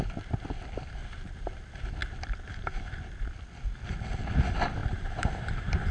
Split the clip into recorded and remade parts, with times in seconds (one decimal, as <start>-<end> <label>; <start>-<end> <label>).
0.0-1.0 recorded; 1.0-1.6 remade; 1.6-4.8 recorded; 4.8-5.9 remade